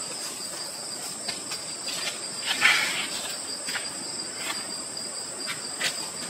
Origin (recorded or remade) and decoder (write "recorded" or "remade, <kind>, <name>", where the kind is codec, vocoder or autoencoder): recorded